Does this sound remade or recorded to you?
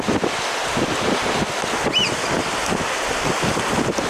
recorded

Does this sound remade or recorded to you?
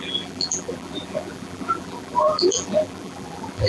remade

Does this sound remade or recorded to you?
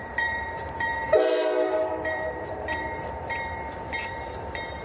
remade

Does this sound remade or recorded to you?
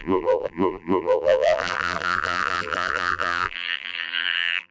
remade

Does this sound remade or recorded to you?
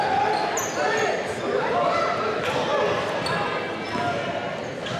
recorded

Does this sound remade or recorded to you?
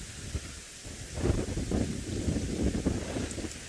remade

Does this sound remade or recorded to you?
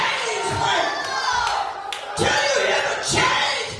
recorded